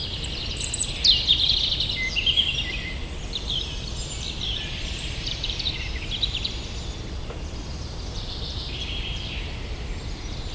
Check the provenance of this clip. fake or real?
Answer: real